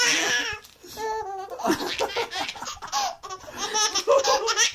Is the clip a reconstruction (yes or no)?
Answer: no